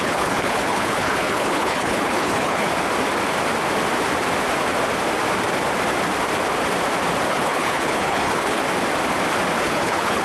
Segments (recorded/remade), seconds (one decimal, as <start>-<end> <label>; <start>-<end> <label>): 0.0-2.7 remade; 2.7-7.3 recorded; 7.3-8.6 remade; 8.6-9.6 recorded; 9.6-10.2 remade